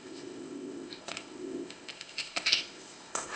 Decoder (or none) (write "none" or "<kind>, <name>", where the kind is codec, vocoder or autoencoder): codec, ZipCodec